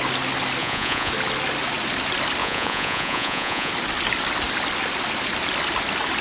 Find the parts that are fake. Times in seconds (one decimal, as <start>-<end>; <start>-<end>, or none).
0.6-1.1; 2.4-3.7